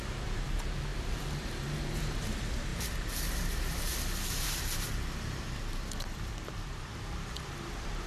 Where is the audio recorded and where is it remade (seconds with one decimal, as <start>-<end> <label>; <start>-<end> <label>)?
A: 0.0-8.1 remade